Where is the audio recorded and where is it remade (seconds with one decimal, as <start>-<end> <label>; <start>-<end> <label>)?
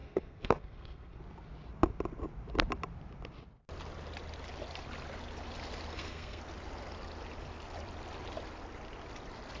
0.0-1.2 remade; 1.2-5.9 recorded; 5.9-6.4 remade; 6.4-9.6 recorded